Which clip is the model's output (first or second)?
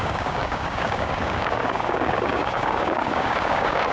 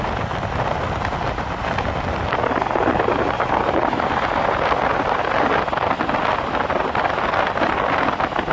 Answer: first